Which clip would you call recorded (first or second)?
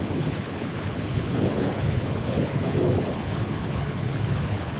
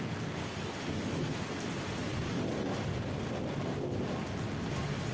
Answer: second